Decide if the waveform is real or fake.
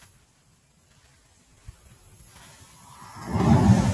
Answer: real